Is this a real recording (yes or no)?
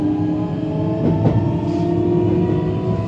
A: yes